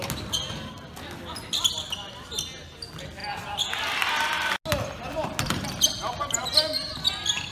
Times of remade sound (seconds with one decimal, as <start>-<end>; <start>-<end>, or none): none